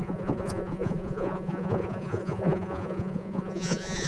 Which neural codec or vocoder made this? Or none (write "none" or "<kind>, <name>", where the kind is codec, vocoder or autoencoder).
vocoder, Vocos